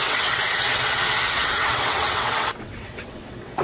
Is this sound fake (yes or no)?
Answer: yes